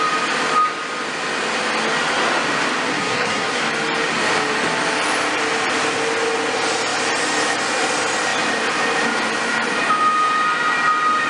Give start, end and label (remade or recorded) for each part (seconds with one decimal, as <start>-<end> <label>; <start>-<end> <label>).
0.0-2.9 recorded; 2.9-3.6 remade; 3.6-11.3 recorded